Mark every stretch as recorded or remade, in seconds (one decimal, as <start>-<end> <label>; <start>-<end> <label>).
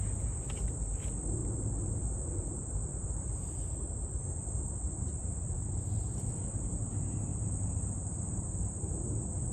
0.0-1.4 recorded; 1.4-2.5 remade; 2.5-2.9 recorded; 2.9-6.3 remade; 6.3-7.3 recorded; 7.3-8.9 remade; 8.9-9.5 recorded